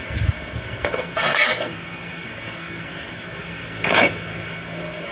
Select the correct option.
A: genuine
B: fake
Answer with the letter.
B